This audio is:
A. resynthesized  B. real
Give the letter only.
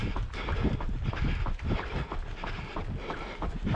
B